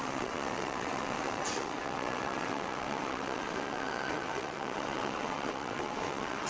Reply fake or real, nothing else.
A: fake